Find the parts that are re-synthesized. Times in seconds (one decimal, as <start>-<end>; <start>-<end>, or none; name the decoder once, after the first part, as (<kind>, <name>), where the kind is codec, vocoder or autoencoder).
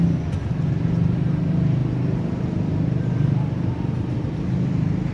1.8-5.1 (vocoder, BigVGAN v2)